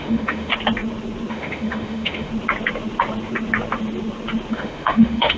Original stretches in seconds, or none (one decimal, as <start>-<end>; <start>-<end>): 0.5-1.3; 2.3-4.5